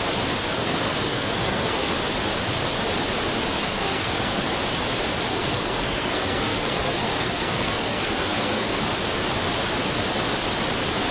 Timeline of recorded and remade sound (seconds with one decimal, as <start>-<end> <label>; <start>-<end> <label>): 0.0-0.4 recorded; 0.4-1.9 remade; 1.9-3.6 recorded; 3.6-4.4 remade; 4.4-5.3 recorded; 5.3-8.8 remade; 8.8-11.1 recorded